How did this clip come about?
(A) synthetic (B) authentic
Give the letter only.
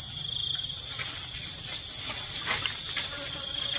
B